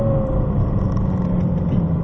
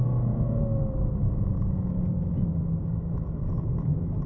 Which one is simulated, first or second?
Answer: second